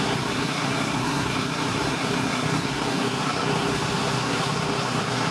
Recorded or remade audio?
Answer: remade